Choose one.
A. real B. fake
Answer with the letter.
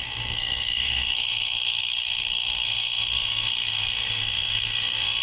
B